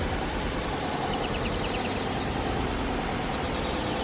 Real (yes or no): yes